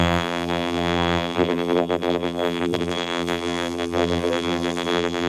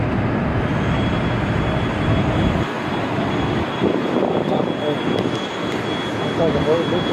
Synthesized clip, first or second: first